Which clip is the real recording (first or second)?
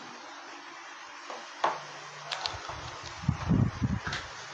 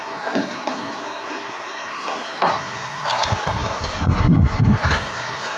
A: first